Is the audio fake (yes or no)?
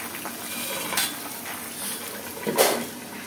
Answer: no